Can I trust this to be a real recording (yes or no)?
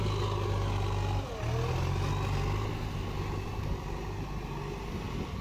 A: yes